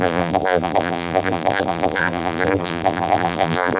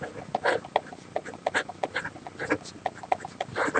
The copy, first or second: first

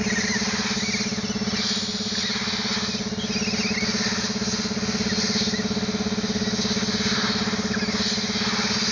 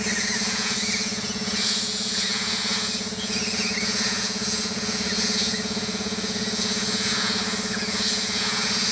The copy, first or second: second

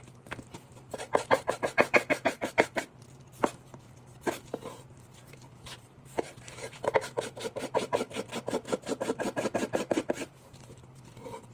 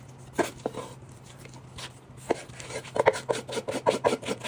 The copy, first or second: first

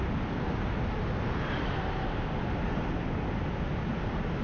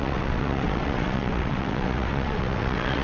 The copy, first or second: second